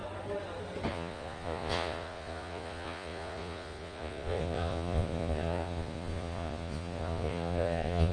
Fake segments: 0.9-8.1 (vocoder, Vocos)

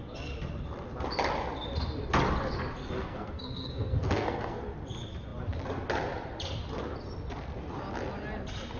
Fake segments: 2.8-4.6 (codec, SNAC)

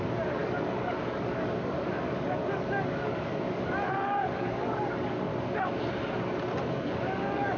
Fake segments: 0.0-5.3 (codec, DAC); 6.7-7.6

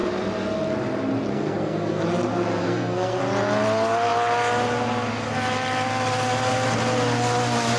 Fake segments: 1.3-2.0 (codec, SNAC); 2.6-3.2